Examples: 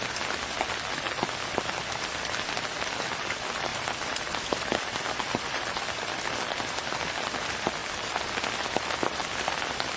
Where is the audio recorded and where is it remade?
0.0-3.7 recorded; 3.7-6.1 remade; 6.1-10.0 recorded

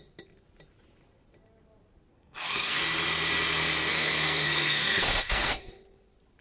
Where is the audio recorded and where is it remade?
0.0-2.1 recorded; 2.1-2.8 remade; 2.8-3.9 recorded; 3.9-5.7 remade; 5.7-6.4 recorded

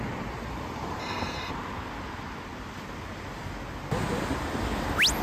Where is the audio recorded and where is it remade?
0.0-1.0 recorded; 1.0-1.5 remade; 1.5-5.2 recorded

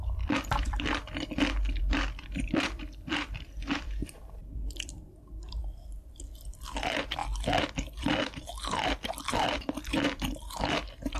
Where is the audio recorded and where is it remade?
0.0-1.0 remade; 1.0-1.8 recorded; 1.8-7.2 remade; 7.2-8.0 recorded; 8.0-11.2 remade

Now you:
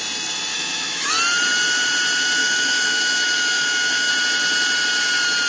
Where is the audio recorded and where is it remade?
0.0-0.5 recorded; 0.5-1.1 remade; 1.1-2.4 recorded; 2.4-4.1 remade; 4.1-5.5 recorded

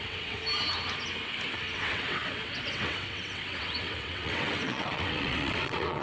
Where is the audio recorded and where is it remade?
0.0-0.4 remade; 0.4-1.5 recorded; 1.5-6.0 remade

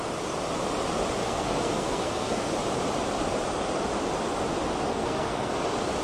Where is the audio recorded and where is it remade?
0.0-1.2 recorded; 1.2-2.5 remade; 2.5-4.9 recorded; 4.9-5.5 remade; 5.5-6.0 recorded

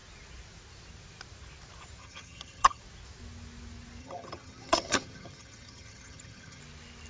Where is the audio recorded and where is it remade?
0.0-2.0 recorded; 2.0-2.8 remade; 2.8-4.0 recorded; 4.0-6.6 remade; 6.6-7.1 recorded